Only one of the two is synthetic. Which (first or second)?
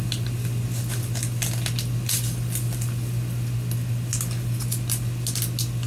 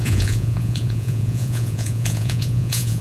second